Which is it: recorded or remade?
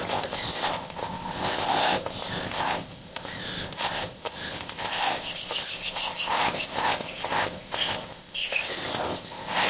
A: remade